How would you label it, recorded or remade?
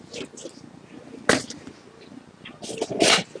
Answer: recorded